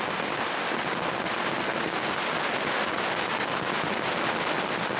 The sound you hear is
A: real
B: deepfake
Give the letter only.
A